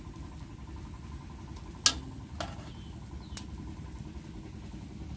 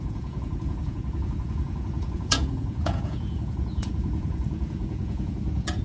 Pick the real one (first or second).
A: first